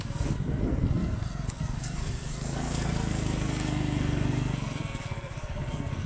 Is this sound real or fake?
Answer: fake